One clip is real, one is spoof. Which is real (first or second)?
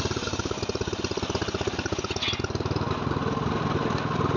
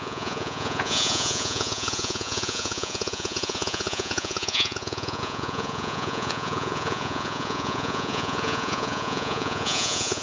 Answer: first